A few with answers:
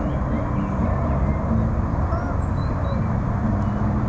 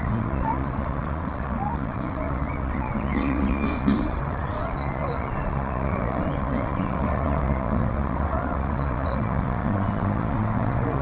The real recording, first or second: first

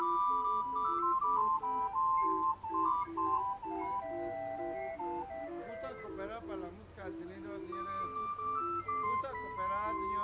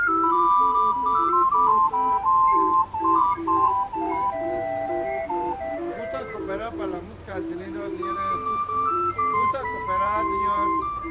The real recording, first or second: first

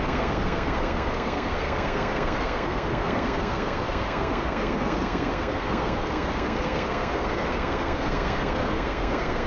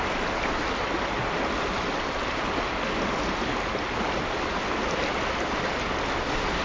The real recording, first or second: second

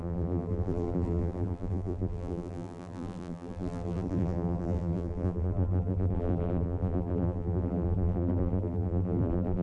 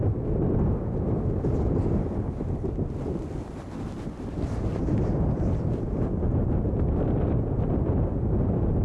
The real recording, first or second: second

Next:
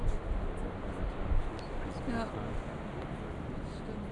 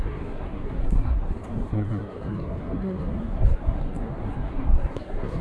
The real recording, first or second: first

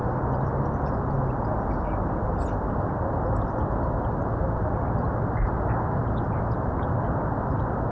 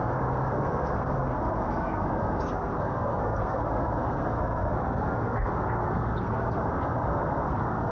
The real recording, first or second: first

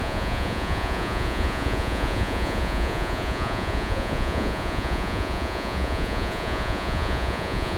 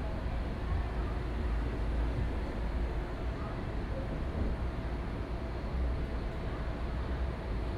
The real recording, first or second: second